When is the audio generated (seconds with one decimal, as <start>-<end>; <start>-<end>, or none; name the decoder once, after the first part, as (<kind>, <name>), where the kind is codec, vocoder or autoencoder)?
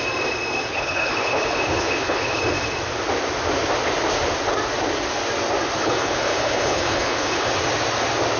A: 0.7-2.4 (codec, HILCodec); 5.8-7.5